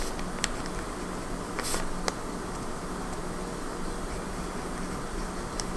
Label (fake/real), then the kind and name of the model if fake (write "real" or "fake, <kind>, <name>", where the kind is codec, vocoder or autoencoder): real